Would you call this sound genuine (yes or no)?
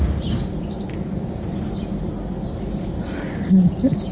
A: no